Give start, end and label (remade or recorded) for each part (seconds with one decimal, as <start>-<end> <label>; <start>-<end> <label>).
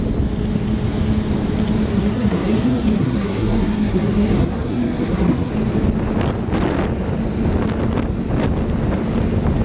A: 0.0-1.9 recorded; 1.9-5.5 remade; 5.5-9.6 recorded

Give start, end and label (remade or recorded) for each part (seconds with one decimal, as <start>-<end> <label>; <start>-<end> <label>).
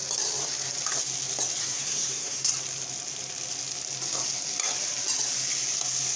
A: 0.0-1.6 recorded; 1.6-2.5 remade; 2.5-6.2 recorded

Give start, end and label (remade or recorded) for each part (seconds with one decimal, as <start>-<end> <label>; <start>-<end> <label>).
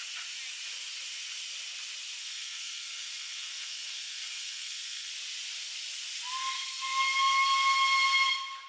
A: 0.0-2.2 recorded; 2.2-5.1 remade; 5.1-6.4 recorded; 6.4-7.1 remade; 7.1-8.7 recorded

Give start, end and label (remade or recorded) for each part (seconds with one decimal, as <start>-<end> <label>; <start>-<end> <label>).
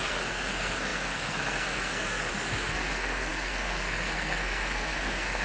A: 0.0-5.4 remade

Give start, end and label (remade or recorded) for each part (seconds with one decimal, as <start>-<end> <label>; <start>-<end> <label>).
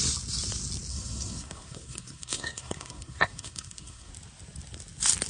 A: 0.0-0.9 recorded; 0.9-4.1 remade; 4.1-5.3 recorded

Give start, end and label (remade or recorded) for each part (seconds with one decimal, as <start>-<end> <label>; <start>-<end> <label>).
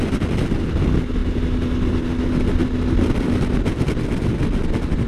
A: 0.0-5.1 recorded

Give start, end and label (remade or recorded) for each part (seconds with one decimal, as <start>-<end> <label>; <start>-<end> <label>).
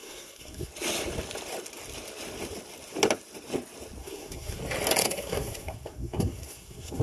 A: 0.0-0.7 remade; 0.7-4.0 recorded; 4.0-4.6 remade; 4.6-5.0 recorded; 5.0-7.0 remade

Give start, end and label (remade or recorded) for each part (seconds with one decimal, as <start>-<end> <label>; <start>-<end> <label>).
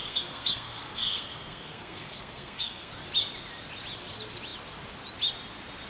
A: 0.0-2.9 remade; 2.9-5.9 recorded